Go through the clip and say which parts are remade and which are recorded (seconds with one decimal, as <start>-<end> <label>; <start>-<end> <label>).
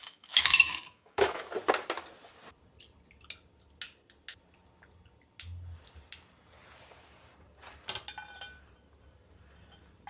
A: 0.0-1.5 remade; 1.5-10.1 recorded